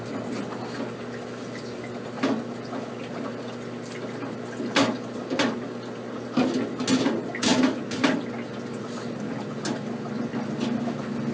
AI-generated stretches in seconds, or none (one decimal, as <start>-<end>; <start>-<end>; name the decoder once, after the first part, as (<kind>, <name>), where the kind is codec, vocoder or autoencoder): none